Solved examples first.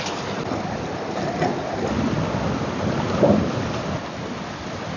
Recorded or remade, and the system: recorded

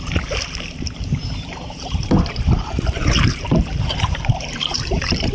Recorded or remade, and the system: remade, vocoder, BigVGAN v2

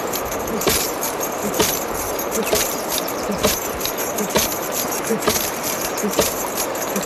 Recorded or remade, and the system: remade, vocoder, BigVGAN v2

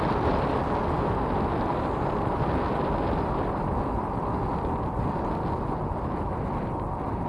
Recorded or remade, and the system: recorded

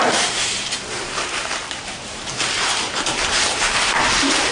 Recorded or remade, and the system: remade, vocoder, BigVGAN v2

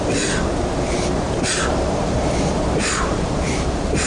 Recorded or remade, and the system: remade, vocoder, BigVGAN v2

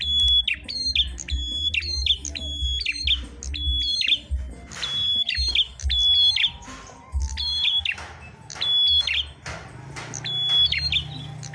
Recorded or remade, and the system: recorded